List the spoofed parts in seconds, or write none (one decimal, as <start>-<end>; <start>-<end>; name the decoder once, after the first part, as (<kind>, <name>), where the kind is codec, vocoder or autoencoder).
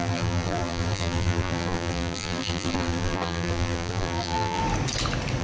0.0-4.6 (vocoder, BigVGAN v2)